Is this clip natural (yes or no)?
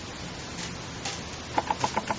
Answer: yes